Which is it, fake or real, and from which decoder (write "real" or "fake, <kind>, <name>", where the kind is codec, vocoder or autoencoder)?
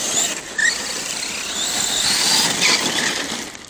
real